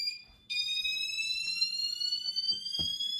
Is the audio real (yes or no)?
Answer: yes